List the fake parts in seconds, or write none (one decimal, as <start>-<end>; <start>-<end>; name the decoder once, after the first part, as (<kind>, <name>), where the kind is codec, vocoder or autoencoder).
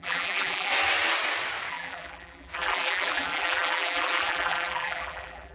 0.0-0.7 (vocoder, BigVGAN v2); 1.7-5.5